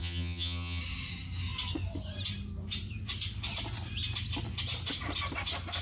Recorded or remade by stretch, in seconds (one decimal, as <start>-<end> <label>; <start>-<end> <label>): 0.0-0.8 remade; 0.8-5.8 recorded